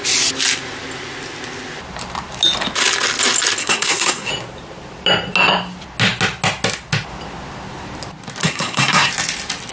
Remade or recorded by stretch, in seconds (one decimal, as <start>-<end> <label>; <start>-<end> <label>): 0.0-3.6 recorded; 3.6-4.3 remade; 4.3-8.4 recorded; 8.4-9.1 remade; 9.1-9.7 recorded